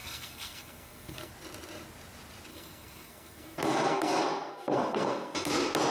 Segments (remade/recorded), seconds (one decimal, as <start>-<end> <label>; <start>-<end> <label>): 0.0-1.3 remade; 1.3-2.5 recorded; 2.5-5.5 remade; 5.5-5.9 recorded